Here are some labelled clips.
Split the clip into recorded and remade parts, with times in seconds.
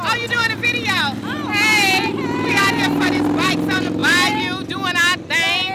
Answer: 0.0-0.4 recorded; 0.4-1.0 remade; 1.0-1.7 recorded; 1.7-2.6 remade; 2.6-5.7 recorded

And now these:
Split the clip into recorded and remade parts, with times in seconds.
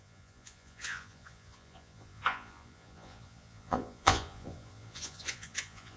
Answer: 0.0-6.0 remade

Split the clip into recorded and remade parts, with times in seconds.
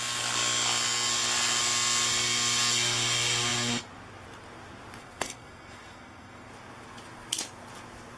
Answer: 0.0-5.0 recorded; 5.0-6.5 remade; 6.5-8.2 recorded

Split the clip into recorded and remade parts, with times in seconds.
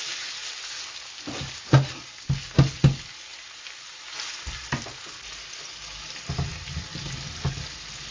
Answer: 0.0-8.1 recorded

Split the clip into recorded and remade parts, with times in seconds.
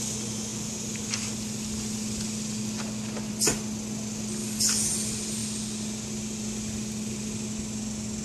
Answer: 0.0-8.2 recorded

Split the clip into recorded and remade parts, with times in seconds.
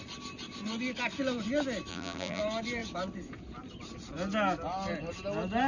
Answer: 0.0-1.9 recorded; 1.9-2.4 remade; 2.4-5.7 recorded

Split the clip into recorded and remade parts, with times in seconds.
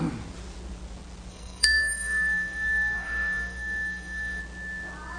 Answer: 0.0-1.3 recorded; 1.3-4.4 remade; 4.4-5.2 recorded